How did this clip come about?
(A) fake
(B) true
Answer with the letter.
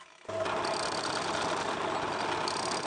B